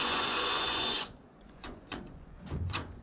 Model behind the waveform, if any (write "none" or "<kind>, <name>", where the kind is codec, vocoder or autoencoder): vocoder, Vocos